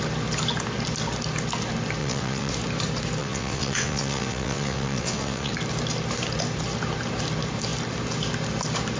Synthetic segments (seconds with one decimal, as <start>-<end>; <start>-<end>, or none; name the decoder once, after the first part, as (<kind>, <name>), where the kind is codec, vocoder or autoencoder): 2.0-2.5 (vocoder, WaveNeXt); 3.2-5.5